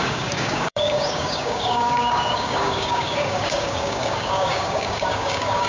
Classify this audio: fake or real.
fake